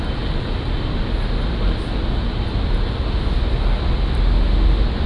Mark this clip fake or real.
real